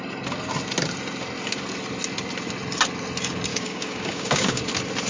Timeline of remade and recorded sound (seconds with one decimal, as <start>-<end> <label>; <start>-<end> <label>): 0.0-3.5 recorded; 3.5-4.6 remade; 4.6-5.1 recorded